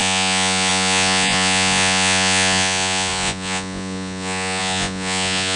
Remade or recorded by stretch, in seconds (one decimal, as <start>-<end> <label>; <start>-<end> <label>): 0.0-5.6 remade